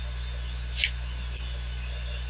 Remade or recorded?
recorded